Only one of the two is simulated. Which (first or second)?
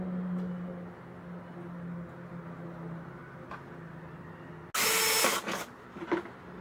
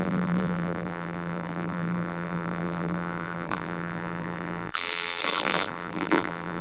second